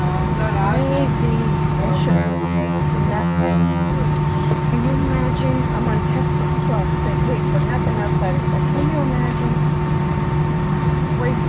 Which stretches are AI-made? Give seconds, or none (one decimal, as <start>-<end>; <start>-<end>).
2.1-2.8; 3.2-3.9